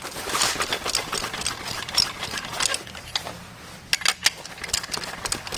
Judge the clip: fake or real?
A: real